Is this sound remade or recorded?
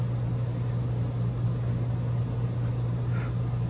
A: recorded